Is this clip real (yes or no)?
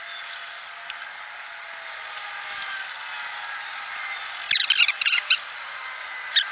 yes